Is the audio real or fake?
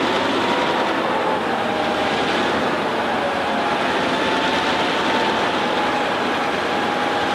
real